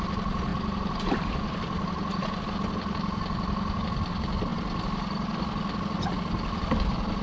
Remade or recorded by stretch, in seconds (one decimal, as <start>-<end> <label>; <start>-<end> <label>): 0.0-0.5 recorded; 0.5-2.4 remade; 2.4-7.2 recorded